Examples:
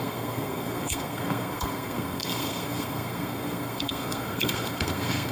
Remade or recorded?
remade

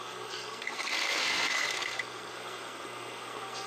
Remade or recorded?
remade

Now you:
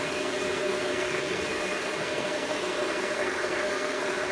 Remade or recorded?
remade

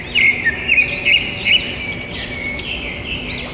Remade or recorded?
recorded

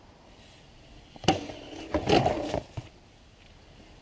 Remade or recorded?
recorded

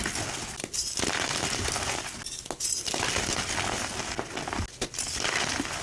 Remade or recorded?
recorded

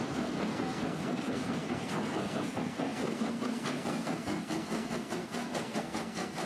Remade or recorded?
remade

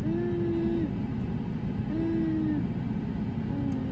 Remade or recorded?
recorded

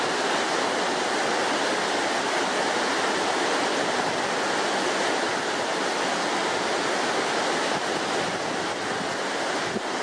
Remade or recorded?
recorded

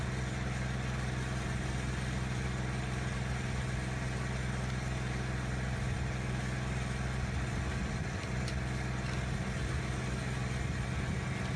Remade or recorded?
recorded